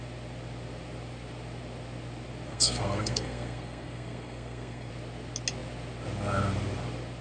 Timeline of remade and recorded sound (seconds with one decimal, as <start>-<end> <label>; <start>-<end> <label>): 0.0-2.5 recorded; 2.5-4.9 remade; 4.9-7.2 recorded